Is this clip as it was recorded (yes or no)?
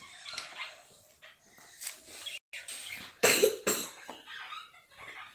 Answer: yes